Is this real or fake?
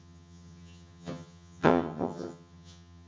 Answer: fake